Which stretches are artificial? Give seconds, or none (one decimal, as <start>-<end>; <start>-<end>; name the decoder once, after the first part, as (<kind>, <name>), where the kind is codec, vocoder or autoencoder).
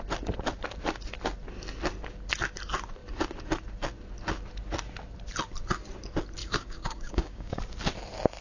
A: 6.4-7.6 (codec, DAC)